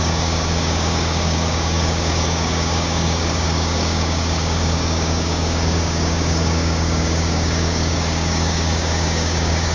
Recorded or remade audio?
remade